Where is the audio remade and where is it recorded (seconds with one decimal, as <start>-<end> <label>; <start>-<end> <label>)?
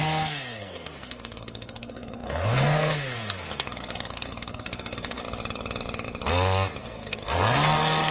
0.0-5.2 remade; 5.2-6.8 recorded; 6.8-8.1 remade